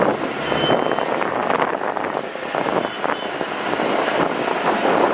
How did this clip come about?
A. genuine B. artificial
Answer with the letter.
A